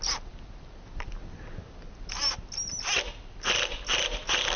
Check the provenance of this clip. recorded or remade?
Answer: recorded